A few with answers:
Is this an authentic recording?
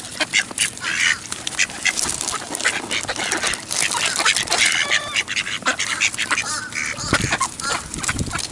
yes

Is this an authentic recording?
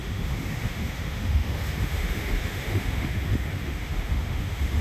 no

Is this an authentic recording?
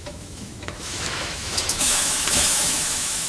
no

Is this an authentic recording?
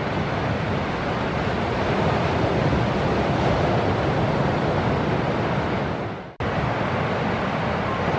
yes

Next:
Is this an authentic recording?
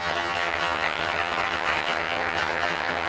no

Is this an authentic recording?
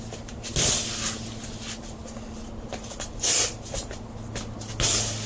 yes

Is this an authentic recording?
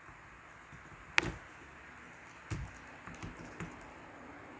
yes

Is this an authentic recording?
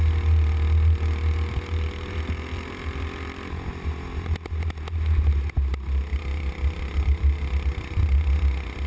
yes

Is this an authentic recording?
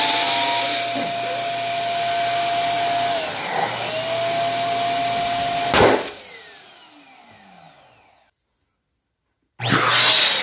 yes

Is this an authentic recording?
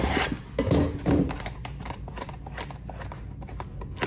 yes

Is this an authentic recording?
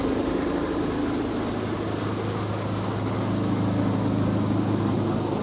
yes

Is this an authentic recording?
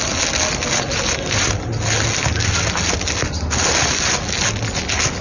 yes